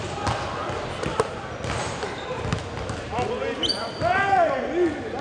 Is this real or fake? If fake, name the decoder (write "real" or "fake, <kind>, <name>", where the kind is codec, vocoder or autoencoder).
real